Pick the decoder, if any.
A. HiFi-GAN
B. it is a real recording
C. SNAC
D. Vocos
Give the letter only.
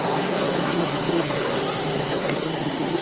C